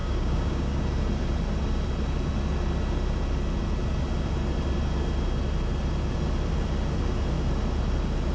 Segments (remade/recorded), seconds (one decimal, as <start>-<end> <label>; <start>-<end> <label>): 0.0-0.8 remade; 0.8-8.3 recorded